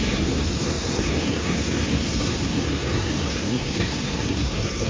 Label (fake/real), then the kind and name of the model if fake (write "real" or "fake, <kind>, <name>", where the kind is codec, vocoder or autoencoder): fake, codec, SNAC